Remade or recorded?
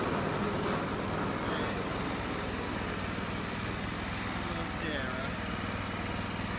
recorded